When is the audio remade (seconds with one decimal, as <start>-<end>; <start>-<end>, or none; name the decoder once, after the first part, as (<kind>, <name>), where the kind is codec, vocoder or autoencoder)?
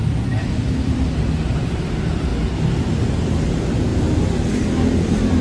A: none